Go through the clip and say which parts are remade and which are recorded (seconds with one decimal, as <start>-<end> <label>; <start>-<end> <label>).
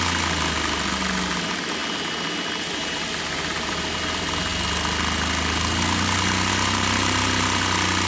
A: 0.0-8.1 recorded